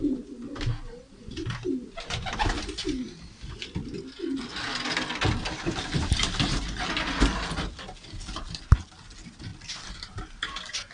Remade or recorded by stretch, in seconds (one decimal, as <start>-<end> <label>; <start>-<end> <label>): 0.0-10.9 recorded